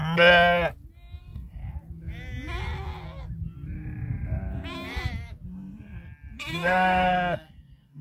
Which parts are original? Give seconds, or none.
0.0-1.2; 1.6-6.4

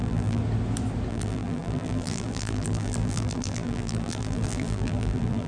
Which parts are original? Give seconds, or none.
0.4-1.1